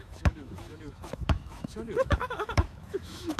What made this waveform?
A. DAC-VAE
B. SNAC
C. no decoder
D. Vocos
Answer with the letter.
A